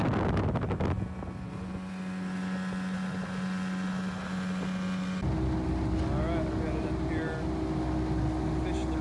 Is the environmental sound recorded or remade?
recorded